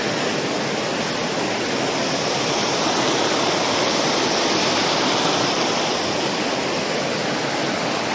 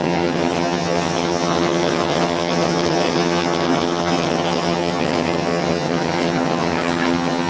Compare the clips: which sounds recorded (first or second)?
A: first